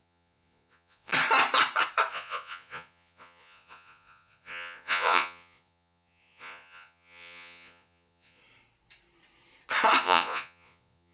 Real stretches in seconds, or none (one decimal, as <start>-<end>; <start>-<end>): 1.1-2.1; 8.4-10.0